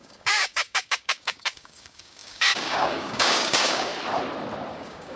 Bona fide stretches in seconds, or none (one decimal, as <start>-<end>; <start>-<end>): 3.9-4.7